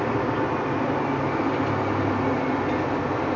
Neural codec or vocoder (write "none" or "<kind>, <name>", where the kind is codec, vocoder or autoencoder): none